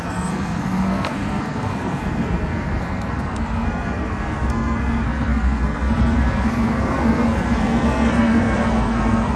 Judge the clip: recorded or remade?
remade